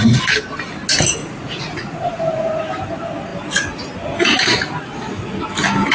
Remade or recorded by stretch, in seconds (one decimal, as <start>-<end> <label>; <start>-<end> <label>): 0.0-1.2 recorded; 1.2-2.6 remade; 2.6-5.9 recorded

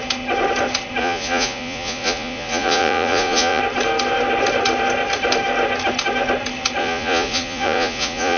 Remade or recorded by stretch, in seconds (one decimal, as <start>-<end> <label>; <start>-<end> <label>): 0.0-1.0 recorded; 1.0-3.6 remade; 3.6-6.8 recorded; 6.8-8.4 remade

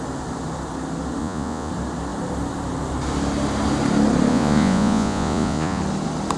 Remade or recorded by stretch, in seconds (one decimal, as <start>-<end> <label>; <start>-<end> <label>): 0.0-1.2 recorded; 1.2-1.7 remade; 1.7-4.3 recorded; 4.3-5.8 remade; 5.8-6.4 recorded

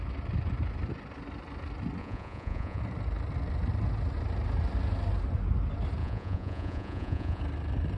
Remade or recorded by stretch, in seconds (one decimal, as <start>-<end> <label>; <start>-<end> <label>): 0.0-2.0 recorded; 2.0-2.8 remade; 2.8-6.0 recorded; 6.0-7.4 remade; 7.4-8.0 recorded

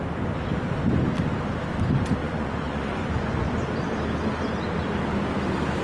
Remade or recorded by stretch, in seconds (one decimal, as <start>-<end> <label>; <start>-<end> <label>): 0.0-2.2 recorded; 2.2-3.6 remade; 3.6-5.8 recorded